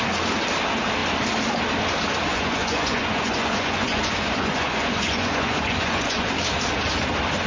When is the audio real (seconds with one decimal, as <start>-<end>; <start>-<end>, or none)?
0.0-2.3; 6.3-7.5